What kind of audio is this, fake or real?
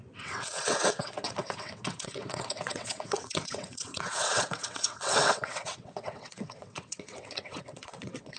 fake